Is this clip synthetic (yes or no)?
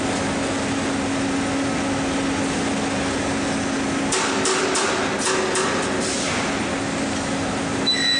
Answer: no